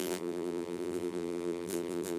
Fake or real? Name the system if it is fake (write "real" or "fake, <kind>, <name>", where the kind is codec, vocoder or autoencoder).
fake, vocoder, BigVGAN v2